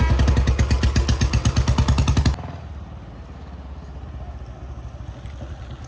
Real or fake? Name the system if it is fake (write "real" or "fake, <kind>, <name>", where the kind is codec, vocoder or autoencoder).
real